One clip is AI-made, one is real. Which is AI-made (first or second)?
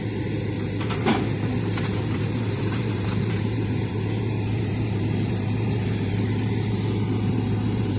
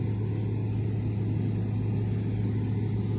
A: first